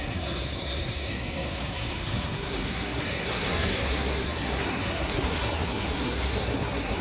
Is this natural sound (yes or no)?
no